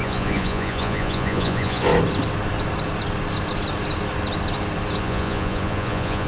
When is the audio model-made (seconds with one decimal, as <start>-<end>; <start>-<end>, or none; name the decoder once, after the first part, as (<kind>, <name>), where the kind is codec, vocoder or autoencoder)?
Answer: 0.0-1.9 (vocoder, Vocos); 5.0-6.3